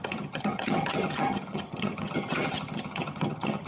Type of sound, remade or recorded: remade